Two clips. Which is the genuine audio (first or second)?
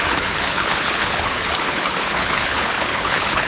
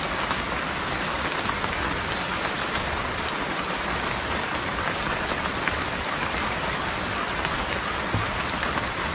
second